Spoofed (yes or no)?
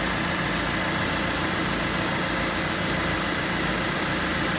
no